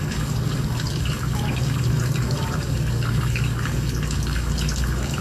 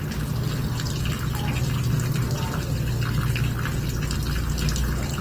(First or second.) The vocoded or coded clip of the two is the first